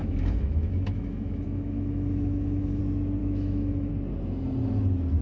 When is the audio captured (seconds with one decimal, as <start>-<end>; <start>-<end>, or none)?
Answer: 2.8-3.2; 3.9-5.2